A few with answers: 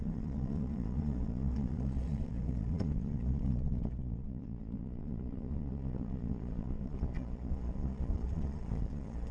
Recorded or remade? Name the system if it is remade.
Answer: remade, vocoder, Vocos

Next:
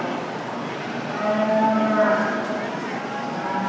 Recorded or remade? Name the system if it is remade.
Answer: recorded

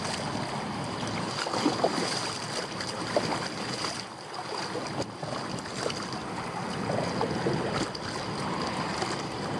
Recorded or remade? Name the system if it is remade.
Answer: recorded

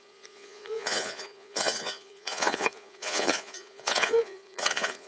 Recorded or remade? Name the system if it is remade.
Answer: remade, vocoder, Vocos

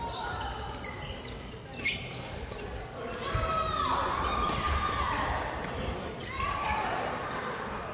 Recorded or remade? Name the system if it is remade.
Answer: recorded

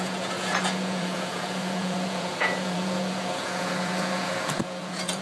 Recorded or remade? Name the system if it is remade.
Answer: remade, vocoder, Vocos